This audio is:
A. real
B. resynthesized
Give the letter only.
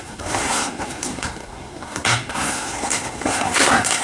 B